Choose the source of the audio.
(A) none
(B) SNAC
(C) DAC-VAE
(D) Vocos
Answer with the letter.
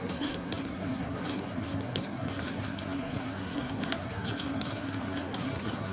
B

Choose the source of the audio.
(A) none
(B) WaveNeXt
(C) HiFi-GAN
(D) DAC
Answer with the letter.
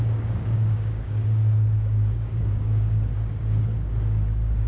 D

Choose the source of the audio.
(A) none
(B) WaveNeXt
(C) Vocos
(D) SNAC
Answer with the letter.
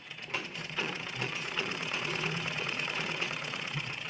C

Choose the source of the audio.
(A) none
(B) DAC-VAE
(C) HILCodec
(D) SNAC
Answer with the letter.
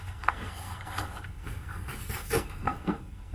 D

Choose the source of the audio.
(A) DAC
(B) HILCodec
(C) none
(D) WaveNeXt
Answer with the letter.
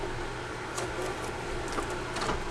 C